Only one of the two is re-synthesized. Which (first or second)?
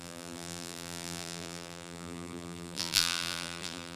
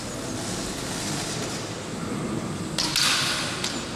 first